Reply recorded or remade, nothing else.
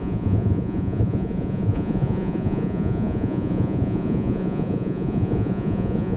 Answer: remade